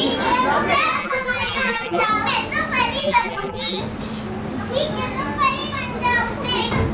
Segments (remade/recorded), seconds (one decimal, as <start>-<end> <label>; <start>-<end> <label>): 0.0-1.0 recorded; 1.0-2.1 remade; 2.1-3.0 recorded; 3.0-3.8 remade; 3.8-6.9 recorded